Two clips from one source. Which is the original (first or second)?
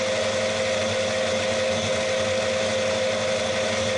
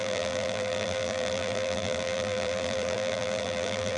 first